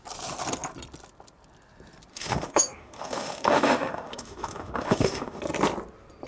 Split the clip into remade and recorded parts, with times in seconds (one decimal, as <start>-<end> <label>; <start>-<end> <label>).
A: 0.0-2.1 recorded; 2.1-5.4 remade; 5.4-6.3 recorded